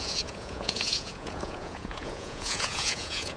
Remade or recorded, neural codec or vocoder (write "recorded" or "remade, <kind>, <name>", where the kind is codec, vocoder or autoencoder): remade, vocoder, Vocos